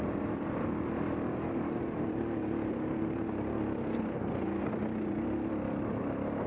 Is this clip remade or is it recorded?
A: recorded